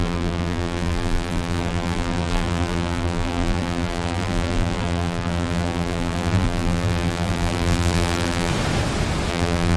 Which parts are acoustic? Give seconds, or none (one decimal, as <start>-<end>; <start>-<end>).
8.5-9.3